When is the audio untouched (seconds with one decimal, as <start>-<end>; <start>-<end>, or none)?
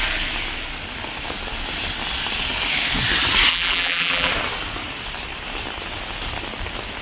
0.0-3.5; 4.3-7.0